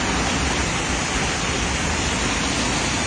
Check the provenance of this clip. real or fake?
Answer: real